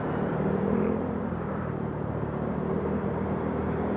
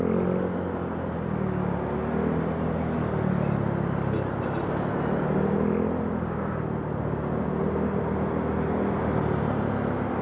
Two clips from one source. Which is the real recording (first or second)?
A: second